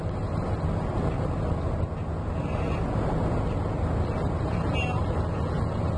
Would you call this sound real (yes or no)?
yes